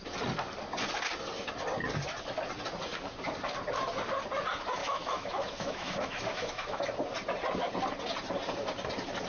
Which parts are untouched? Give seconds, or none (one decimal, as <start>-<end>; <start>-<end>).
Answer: 0.0-4.8; 6.8-9.3